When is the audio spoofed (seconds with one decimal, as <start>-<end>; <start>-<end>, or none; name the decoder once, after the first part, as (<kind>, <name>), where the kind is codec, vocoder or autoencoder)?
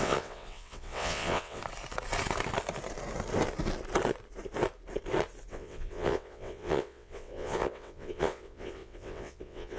0.0-1.6 (vocoder, WaveNeXt); 5.5-9.8